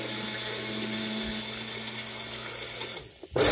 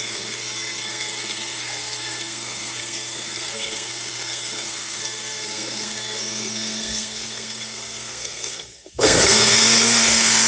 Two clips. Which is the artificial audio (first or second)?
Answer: second